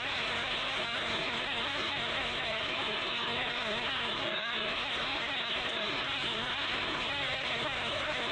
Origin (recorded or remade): remade